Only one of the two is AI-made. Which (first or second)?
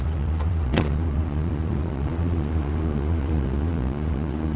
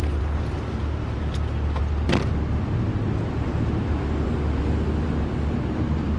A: first